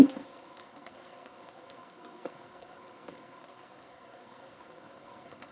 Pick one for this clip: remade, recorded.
remade